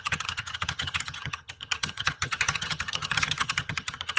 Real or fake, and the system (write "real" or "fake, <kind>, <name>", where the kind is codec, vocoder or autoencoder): fake, vocoder, HiFi-GAN